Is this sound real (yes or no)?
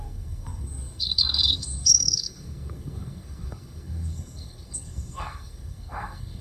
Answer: no